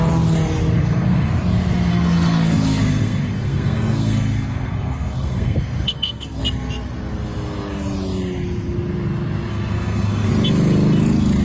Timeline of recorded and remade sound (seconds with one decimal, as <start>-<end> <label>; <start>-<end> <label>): 0.0-0.8 recorded; 0.8-1.3 remade; 1.3-1.9 recorded; 1.9-6.4 remade; 6.4-9.5 recorded; 9.5-10.3 remade; 10.3-11.4 recorded